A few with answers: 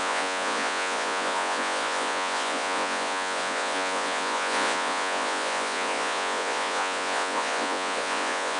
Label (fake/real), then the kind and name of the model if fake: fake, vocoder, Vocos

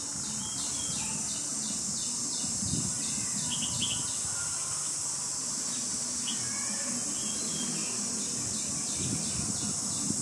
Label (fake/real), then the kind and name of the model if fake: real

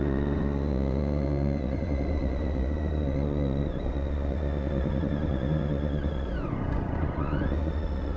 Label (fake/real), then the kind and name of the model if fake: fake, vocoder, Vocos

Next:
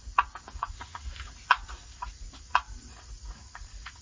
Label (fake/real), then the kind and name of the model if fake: fake, vocoder, Vocos